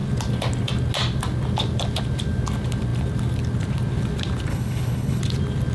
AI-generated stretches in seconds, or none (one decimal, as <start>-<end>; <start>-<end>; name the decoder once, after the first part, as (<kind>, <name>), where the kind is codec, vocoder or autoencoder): 4.5-5.2 (codec, HILCodec)